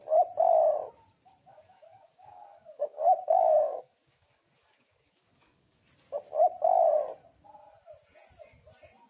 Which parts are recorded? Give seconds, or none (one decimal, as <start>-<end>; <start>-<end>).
0.0-1.5; 5.8-9.1